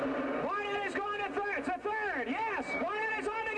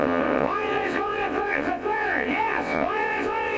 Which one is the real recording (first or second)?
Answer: first